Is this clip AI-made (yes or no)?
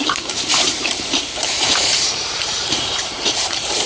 yes